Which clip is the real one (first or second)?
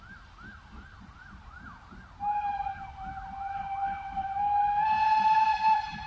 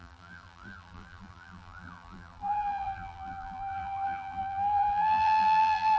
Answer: first